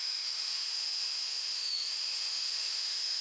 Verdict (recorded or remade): remade